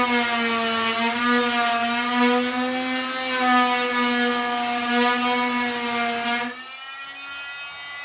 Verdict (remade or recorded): recorded